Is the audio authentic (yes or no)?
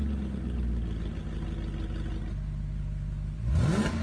yes